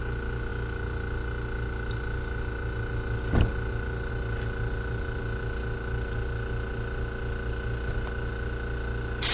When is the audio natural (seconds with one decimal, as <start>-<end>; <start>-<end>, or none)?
0.0-9.3